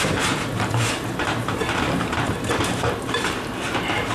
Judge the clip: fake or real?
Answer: fake